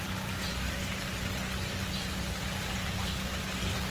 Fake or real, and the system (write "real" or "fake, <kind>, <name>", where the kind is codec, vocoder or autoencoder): real